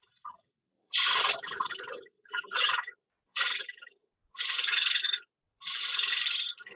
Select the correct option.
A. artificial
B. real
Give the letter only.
A